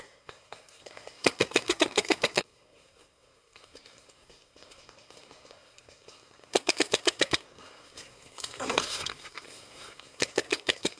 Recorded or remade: remade